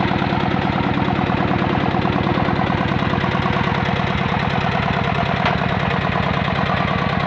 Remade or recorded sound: recorded